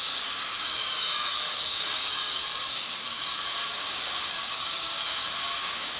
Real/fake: fake